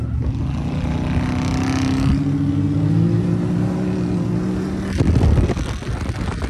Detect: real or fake real